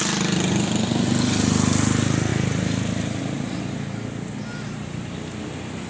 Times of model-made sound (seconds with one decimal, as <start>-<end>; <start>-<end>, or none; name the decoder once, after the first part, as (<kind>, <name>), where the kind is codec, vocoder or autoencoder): none